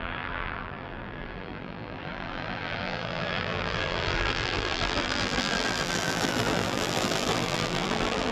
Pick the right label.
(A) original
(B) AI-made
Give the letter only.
B